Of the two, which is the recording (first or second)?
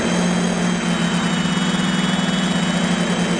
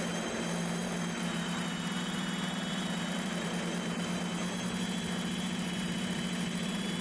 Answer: first